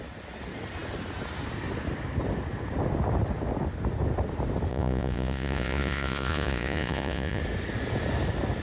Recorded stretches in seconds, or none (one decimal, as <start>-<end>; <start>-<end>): 0.0-4.7; 7.4-8.6